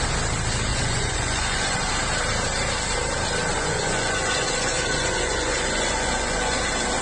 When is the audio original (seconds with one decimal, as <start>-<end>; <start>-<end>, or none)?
0.0-0.7; 1.9-3.5; 6.6-7.0